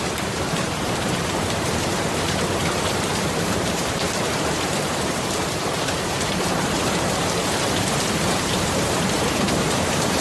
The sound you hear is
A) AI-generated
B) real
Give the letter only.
A